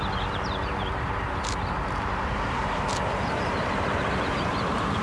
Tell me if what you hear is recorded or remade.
remade